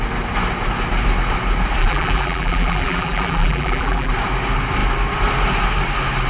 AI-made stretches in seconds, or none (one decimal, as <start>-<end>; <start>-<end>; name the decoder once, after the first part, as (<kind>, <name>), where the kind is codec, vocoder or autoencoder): 1.8-4.1 (vocoder, BigVGAN v2)